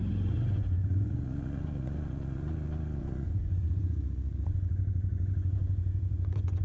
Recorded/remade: remade